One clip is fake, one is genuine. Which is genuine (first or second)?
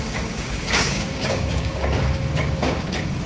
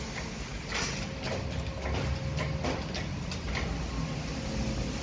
second